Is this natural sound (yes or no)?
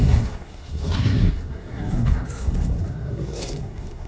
no